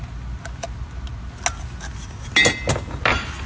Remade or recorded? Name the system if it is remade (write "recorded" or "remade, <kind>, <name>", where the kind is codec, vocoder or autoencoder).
recorded